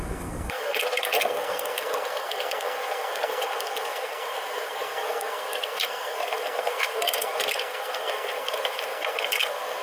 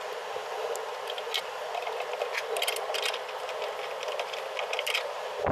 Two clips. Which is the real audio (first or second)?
second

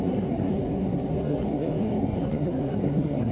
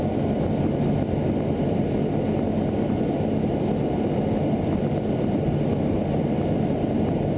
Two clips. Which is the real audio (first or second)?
second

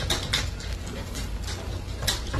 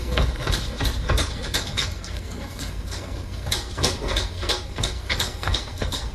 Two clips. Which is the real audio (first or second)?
first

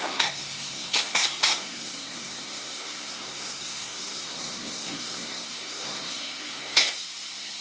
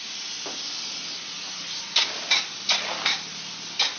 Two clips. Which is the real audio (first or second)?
second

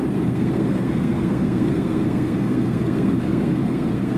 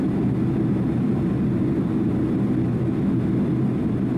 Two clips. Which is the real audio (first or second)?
second